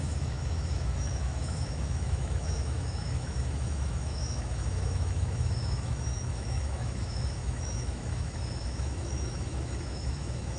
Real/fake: fake